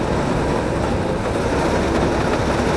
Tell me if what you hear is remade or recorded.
recorded